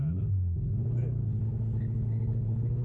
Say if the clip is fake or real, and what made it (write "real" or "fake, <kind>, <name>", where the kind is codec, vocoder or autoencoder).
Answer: fake, codec, HILCodec